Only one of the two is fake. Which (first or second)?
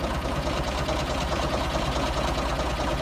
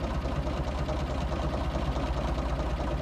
first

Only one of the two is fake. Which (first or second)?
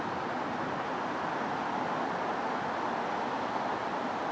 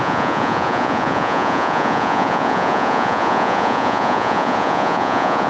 second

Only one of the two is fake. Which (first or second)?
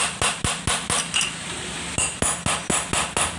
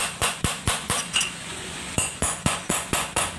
second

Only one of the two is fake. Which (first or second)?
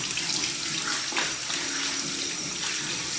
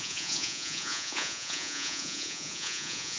second